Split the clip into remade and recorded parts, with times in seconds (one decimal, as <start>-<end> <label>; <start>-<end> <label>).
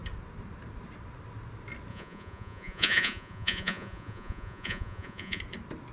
0.0-1.9 recorded; 1.9-5.4 remade; 5.4-5.9 recorded